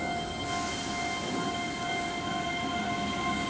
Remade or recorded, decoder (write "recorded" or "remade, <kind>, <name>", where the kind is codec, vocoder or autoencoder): recorded